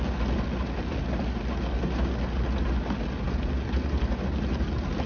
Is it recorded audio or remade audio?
recorded